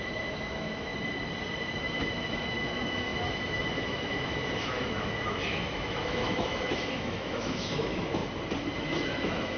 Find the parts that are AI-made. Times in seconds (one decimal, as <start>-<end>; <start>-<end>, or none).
0.0-0.9; 1.8-8.2; 9.2-9.6